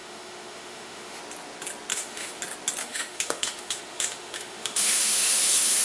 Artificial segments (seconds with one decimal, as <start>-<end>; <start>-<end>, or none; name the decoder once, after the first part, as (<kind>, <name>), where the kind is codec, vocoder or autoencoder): 0.0-1.2 (autoencoder, DAC-VAE); 1.9-2.4; 2.8-5.8